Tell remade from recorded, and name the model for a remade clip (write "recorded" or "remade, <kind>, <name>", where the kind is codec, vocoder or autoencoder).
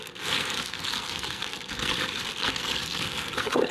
remade, codec, SNAC